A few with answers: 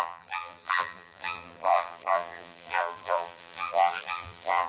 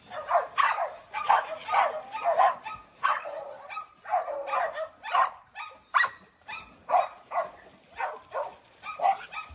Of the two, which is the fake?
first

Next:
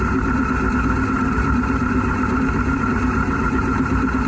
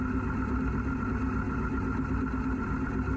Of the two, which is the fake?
first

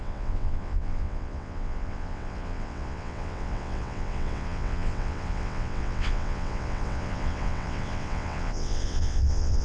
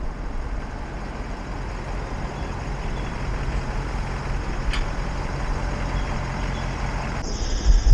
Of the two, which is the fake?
first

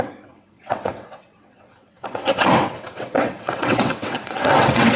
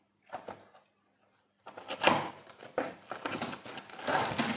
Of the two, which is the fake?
first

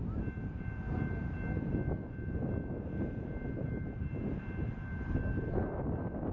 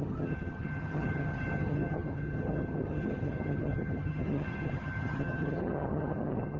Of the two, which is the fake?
second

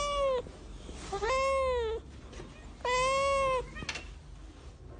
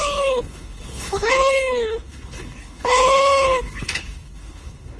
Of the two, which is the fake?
second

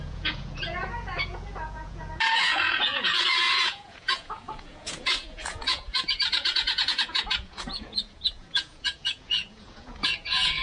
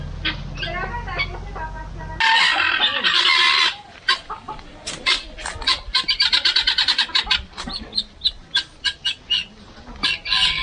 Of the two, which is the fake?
first